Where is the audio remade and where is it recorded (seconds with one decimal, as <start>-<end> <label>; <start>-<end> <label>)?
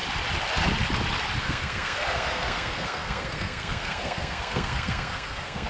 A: 0.0-1.4 recorded; 1.4-5.7 remade